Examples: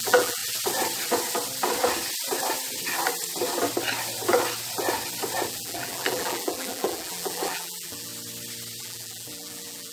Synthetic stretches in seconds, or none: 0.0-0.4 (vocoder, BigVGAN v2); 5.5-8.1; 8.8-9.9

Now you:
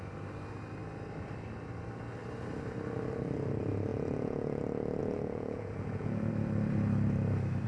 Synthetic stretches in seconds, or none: 3.9-4.6 (vocoder, Vocos); 5.0-6.3

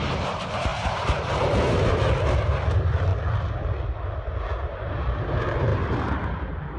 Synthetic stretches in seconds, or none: 0.0-3.1 (vocoder, BigVGAN v2); 4.7-6.8